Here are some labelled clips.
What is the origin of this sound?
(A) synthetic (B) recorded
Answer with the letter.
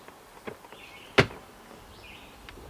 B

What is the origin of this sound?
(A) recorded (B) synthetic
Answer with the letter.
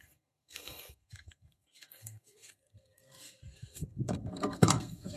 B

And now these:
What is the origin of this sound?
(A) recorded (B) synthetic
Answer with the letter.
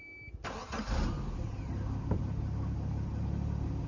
A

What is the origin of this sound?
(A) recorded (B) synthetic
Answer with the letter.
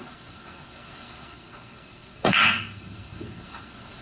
B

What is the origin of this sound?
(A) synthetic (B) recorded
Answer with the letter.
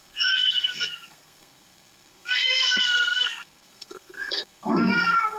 A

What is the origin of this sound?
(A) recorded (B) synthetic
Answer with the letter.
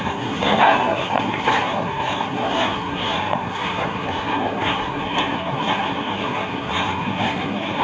B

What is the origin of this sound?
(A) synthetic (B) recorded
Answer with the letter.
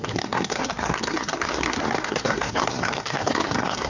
A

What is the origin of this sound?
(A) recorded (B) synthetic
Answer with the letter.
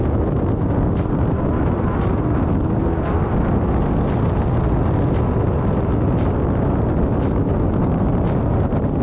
A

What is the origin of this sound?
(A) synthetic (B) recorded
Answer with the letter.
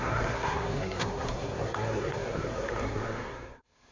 A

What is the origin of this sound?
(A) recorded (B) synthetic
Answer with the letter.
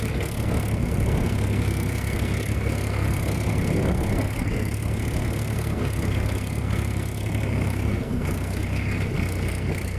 B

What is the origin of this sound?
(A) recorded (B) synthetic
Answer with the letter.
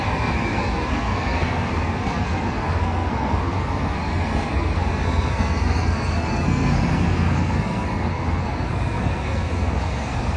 B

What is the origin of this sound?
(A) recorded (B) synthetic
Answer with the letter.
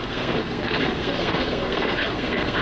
B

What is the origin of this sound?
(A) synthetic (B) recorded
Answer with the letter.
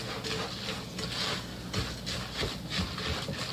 B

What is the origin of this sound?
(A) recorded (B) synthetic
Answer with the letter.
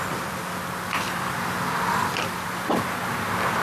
A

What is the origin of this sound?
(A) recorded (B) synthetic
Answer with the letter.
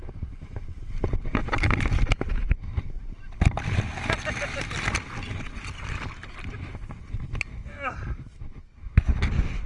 A